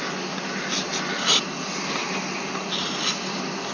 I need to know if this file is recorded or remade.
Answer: recorded